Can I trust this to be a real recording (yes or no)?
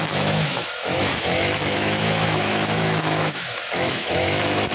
no